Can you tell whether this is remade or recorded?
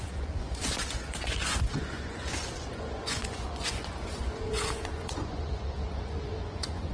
remade